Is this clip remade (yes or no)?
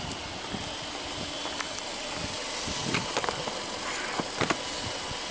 no